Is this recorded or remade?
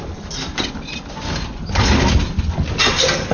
recorded